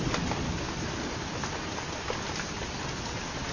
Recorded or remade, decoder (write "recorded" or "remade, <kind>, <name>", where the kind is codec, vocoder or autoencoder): recorded